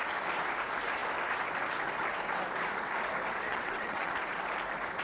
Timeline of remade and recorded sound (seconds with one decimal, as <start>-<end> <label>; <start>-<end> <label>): 0.0-3.5 recorded; 3.5-4.1 remade; 4.1-5.0 recorded